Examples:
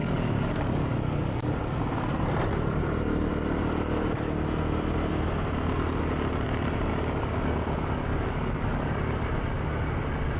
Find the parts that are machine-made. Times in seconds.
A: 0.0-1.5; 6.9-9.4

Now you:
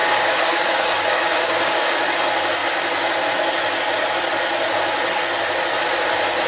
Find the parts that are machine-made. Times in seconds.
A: 0.0-1.9

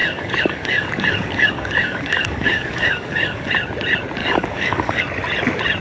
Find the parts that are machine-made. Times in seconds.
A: 0.0-3.5; 4.2-5.0

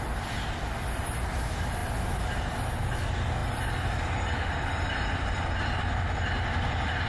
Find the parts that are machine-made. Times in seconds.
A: none

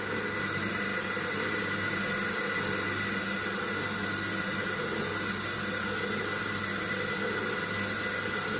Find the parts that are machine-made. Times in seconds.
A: none

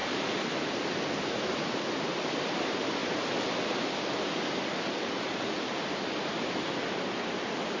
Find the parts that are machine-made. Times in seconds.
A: none

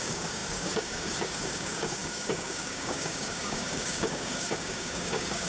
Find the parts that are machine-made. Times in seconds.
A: 0.0-5.5

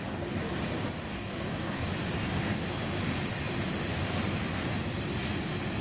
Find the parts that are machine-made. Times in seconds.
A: 1.1-1.9